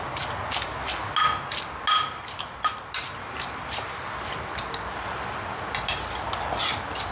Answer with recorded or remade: recorded